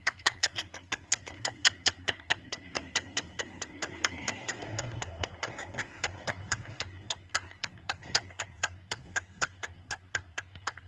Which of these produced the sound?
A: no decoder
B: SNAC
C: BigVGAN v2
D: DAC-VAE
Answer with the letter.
B